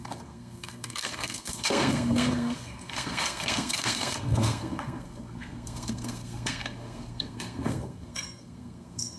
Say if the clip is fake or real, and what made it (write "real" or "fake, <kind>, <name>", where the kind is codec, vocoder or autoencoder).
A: fake, codec, SNAC